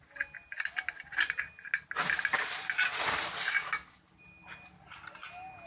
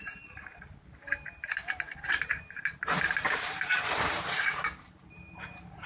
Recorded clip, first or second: first